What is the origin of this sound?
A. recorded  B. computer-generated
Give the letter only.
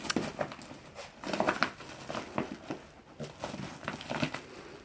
A